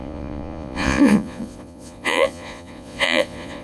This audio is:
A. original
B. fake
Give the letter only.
B